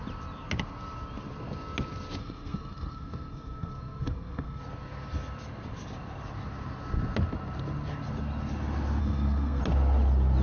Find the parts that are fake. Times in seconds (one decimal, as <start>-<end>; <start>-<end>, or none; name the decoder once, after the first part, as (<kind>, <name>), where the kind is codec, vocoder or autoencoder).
2.2-4.6 (codec, SNAC); 9.0-9.6